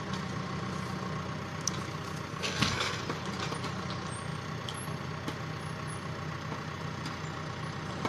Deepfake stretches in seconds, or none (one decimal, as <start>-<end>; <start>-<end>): 2.3-3.0